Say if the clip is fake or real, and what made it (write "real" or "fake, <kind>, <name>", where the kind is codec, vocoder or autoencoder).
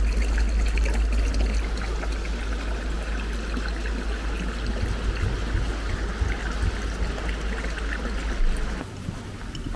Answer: real